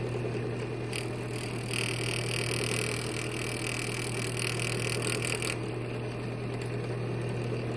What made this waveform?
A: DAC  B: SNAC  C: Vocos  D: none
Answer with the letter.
D